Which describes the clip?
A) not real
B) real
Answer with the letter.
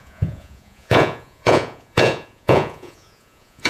A